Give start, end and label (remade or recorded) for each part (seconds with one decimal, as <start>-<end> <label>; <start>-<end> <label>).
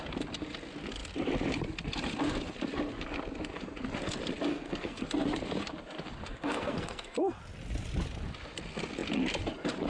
0.0-4.5 recorded; 4.5-5.0 remade; 5.0-6.3 recorded; 6.3-7.4 remade; 7.4-9.9 recorded